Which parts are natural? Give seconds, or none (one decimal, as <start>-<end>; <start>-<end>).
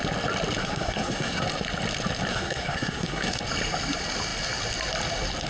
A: 0.0-0.6; 1.4-2.3; 3.4-5.5